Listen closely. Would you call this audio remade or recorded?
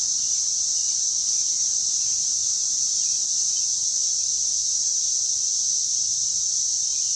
remade